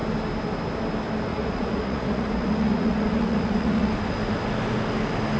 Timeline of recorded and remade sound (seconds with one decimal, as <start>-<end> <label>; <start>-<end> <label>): 0.0-1.3 recorded; 1.3-3.9 remade; 3.9-5.4 recorded